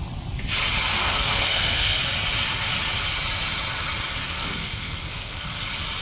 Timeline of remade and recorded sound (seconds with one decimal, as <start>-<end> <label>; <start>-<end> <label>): 0.0-0.9 recorded; 0.9-2.0 remade; 2.0-4.2 recorded; 4.2-5.6 remade; 5.6-6.0 recorded